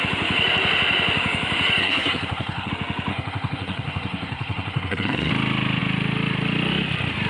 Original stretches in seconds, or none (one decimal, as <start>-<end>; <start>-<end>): 0.0-1.8; 2.7-3.1; 5.3-7.3